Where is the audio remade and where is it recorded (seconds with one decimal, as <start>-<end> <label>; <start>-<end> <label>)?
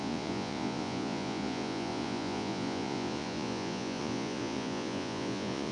0.0-5.7 remade